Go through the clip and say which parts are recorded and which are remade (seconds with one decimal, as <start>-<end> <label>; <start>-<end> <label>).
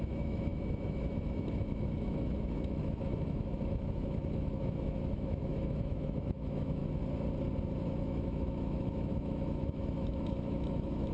0.0-6.8 remade; 6.8-7.8 recorded; 7.8-11.1 remade